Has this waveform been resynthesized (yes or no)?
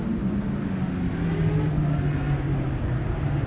no